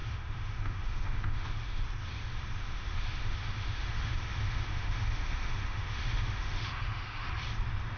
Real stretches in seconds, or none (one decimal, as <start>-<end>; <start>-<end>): 1.8-2.6; 7.3-8.0